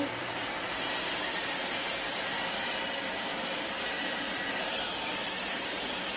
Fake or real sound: fake